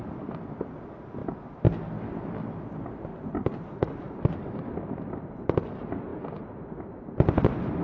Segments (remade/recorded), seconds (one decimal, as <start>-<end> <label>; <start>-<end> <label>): 0.0-3.1 recorded; 3.1-5.1 remade; 5.1-7.8 recorded